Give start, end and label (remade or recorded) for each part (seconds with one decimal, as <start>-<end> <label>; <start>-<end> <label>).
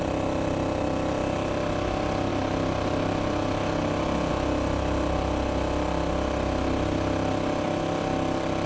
0.0-8.7 recorded